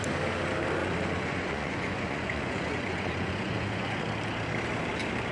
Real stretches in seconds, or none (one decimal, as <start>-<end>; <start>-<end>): 0.0-0.8; 4.0-5.3